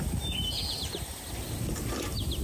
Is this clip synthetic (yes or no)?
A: no